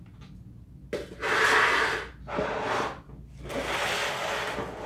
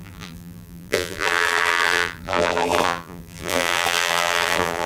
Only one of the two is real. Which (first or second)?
first